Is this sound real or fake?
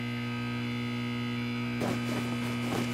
real